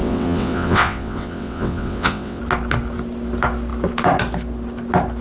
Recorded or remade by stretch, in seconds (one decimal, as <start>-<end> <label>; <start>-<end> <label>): 0.0-2.4 remade; 2.4-5.2 recorded